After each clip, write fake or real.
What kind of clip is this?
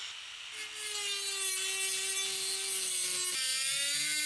real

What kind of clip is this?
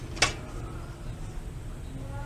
real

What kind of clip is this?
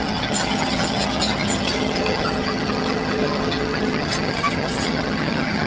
fake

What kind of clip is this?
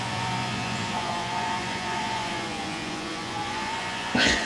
fake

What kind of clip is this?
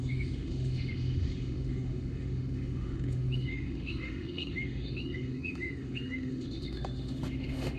fake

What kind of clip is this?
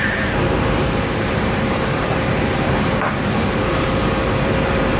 fake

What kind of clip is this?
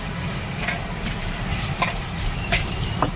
fake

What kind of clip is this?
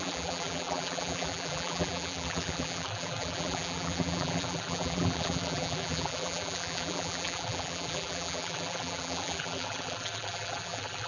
fake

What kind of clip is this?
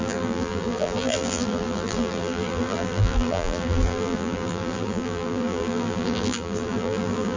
fake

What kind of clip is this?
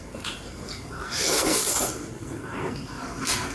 fake